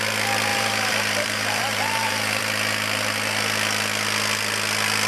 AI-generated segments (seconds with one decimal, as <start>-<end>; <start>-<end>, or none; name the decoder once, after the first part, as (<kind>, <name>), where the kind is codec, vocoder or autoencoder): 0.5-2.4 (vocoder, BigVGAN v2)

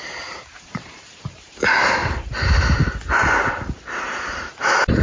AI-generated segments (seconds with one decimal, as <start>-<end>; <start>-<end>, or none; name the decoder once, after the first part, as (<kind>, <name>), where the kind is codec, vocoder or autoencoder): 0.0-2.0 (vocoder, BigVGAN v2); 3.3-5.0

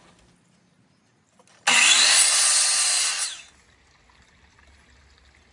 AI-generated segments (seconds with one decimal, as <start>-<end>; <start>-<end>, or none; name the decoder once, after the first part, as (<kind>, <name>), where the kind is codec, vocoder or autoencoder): none

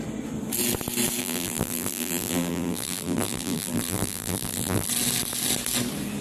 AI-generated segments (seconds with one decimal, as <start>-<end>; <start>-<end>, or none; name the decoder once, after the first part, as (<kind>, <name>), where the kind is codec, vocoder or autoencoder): 1.2-4.9 (vocoder, BigVGAN v2)

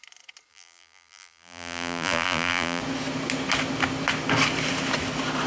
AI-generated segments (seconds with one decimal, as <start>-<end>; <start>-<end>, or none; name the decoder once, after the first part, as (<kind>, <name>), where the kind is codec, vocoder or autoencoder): 0.5-2.8 (vocoder, BigVGAN v2)

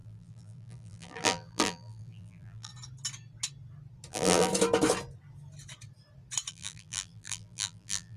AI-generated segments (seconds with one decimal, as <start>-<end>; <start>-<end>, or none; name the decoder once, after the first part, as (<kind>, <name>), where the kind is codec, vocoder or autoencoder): 0.0-2.7 (vocoder, BigVGAN v2); 4.1-4.5; 6.5-8.2

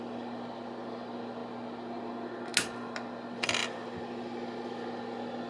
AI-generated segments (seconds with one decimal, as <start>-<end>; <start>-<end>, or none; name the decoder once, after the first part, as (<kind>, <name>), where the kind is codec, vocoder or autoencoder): 3.6-4.7 (vocoder, BigVGAN v2)

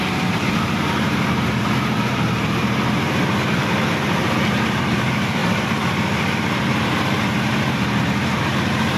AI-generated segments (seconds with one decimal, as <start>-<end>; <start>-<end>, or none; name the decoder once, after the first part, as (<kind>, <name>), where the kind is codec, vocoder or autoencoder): 0.0-9.0 (vocoder, BigVGAN v2)